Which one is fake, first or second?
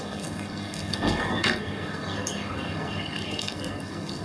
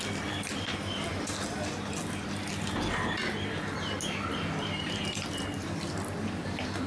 first